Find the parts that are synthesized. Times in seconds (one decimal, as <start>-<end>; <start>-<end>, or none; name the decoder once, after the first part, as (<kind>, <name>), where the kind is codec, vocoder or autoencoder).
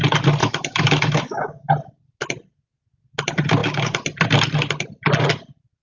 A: 0.4-1.7 (autoencoder, DAC-VAE)